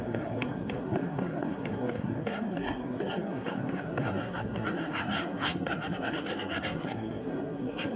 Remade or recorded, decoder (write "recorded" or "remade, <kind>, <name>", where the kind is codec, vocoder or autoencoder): remade, codec, SNAC